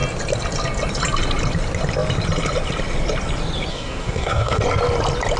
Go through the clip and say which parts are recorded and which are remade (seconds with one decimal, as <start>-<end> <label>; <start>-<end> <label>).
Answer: 0.0-3.7 recorded; 3.7-4.6 remade; 4.6-5.4 recorded